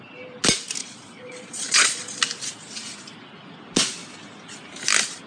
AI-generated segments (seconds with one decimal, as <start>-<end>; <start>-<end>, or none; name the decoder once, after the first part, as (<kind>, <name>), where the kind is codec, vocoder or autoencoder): 0.8-2.2 (vocoder, Vocos)